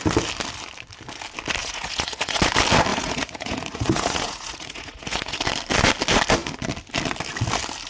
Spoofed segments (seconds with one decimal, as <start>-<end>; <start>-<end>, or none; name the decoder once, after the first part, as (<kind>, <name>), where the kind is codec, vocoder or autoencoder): 1.6-2.4 (vocoder, Vocos); 2.9-5.4